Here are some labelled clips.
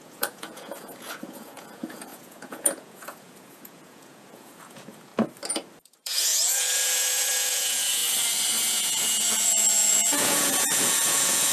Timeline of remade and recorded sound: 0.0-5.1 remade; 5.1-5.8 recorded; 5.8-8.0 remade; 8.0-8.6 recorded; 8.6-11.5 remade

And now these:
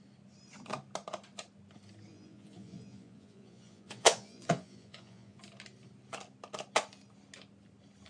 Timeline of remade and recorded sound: 0.0-2.1 recorded; 2.1-5.4 remade; 5.4-8.1 recorded

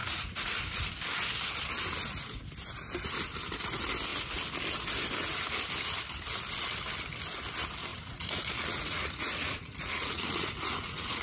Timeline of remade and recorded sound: 0.0-0.6 remade; 0.6-7.9 recorded; 7.9-11.2 remade

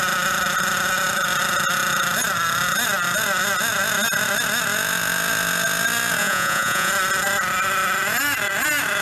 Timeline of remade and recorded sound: 0.0-6.2 recorded; 6.2-6.9 remade; 6.9-9.0 recorded

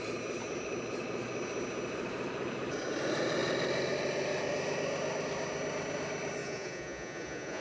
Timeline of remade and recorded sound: 0.0-6.4 recorded; 6.4-7.6 remade

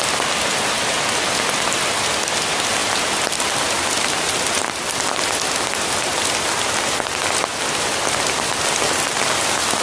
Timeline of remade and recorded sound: 0.0-9.8 recorded